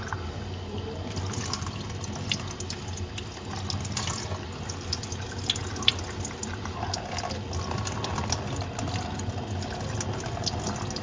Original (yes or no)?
yes